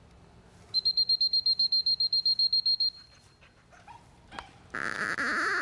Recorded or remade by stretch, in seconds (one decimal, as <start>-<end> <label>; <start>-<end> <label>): 0.0-5.6 recorded